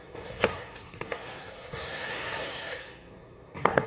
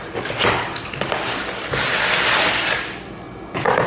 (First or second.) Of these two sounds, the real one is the second